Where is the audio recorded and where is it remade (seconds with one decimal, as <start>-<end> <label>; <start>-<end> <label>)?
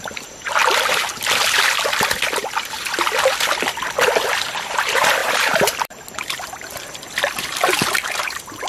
0.0-5.2 remade; 5.2-7.9 recorded; 7.9-8.7 remade